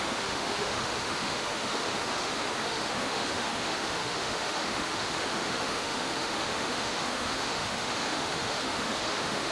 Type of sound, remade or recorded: remade